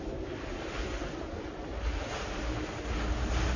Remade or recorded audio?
recorded